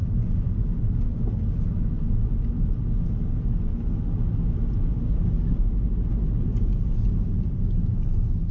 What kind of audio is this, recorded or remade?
recorded